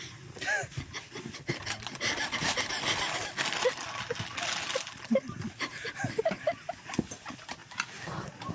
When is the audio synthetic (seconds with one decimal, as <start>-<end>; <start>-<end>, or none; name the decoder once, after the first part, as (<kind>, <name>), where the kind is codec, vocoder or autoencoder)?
none